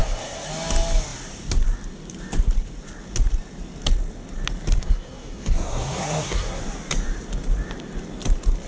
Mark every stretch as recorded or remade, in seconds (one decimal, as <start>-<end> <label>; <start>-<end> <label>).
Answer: 0.0-0.5 remade; 0.5-4.8 recorded; 4.8-6.6 remade; 6.6-8.7 recorded

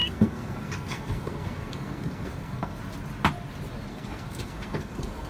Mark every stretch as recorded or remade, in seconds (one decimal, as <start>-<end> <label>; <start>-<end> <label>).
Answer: 0.0-2.8 remade; 2.8-3.9 recorded; 3.9-5.3 remade